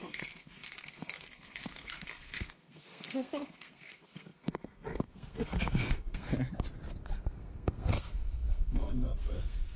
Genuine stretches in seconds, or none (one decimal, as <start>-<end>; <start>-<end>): 6.3-7.0